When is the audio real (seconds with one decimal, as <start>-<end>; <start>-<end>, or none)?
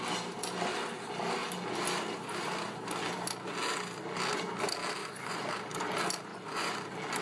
0.0-5.0; 5.5-6.3; 6.8-7.2